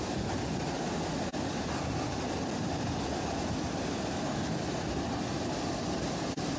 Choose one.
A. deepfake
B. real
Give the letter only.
B